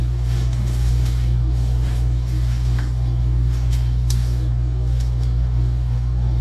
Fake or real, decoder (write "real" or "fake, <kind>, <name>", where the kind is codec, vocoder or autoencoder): fake, codec, DAC